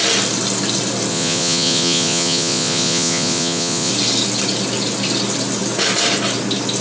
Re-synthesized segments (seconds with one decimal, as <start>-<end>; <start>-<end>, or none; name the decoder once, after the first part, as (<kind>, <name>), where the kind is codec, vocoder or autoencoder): 1.1-3.9 (vocoder, Vocos)